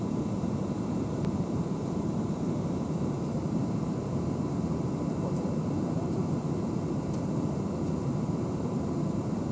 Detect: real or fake fake